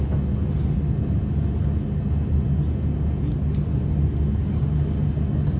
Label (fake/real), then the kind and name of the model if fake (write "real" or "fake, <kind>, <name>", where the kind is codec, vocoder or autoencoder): real